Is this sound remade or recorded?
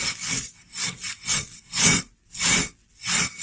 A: remade